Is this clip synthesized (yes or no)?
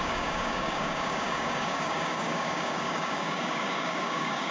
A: yes